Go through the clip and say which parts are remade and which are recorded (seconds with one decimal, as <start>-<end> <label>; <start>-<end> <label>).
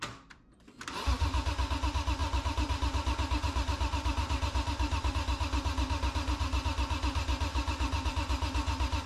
0.0-2.2 recorded; 2.2-5.1 remade; 5.1-7.5 recorded; 7.5-8.1 remade; 8.1-9.1 recorded